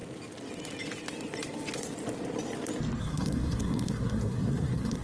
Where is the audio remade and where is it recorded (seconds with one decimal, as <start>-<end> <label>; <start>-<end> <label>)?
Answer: 0.0-3.0 recorded; 3.0-5.0 remade